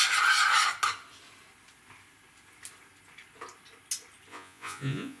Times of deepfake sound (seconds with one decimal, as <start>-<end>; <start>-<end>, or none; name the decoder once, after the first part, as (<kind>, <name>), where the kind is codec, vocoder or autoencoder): 4.3-5.2 (vocoder, Vocos)